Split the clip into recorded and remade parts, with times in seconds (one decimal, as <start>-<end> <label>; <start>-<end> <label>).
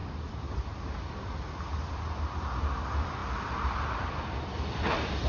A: 0.0-1.1 remade; 1.1-1.7 recorded; 1.7-2.3 remade; 2.3-3.2 recorded; 3.2-5.3 remade